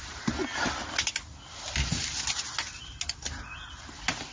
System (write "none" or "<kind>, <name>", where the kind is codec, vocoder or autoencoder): none